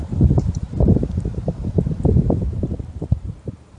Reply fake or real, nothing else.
fake